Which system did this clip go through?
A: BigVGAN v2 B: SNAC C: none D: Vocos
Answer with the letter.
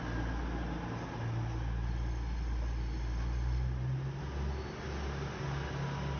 C